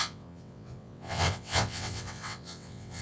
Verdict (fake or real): fake